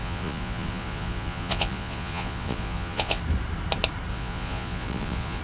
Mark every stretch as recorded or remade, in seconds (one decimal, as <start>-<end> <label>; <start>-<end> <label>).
0.0-3.2 remade; 3.2-4.1 recorded; 4.1-5.4 remade